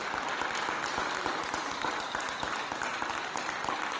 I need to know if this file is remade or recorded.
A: recorded